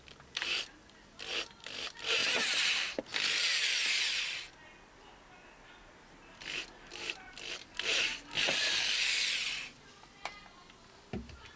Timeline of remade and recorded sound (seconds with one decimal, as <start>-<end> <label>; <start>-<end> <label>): 0.0-2.2 recorded; 2.2-3.0 remade; 3.0-11.6 recorded